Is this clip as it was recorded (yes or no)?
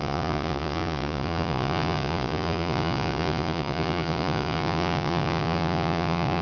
no